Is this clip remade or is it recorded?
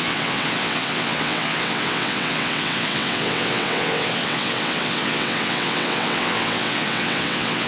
remade